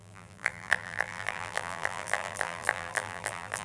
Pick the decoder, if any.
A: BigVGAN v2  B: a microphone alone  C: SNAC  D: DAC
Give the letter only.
A